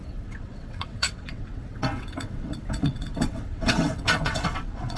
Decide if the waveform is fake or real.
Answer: fake